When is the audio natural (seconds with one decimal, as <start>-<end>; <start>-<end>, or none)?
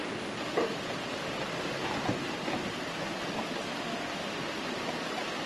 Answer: 0.0-5.5